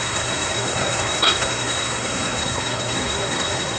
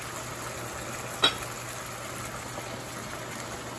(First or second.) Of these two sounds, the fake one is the first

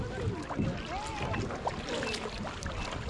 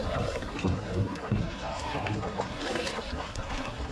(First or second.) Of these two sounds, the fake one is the second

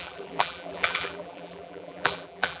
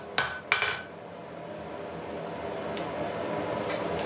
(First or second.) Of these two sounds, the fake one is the first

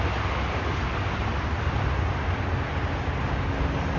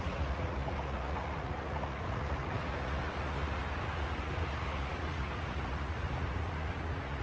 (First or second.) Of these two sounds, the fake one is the second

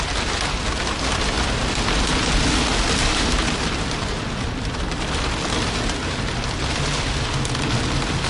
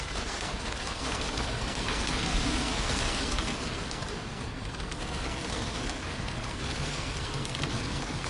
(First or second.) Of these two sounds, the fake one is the second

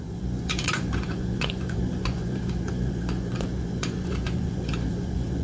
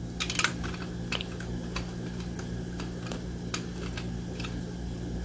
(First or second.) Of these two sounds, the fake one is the first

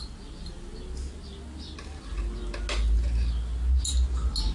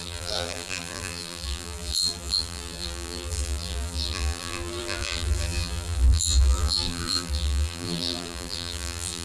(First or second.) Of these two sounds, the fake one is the second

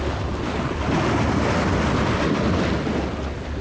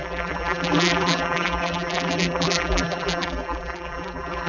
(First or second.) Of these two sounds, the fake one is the second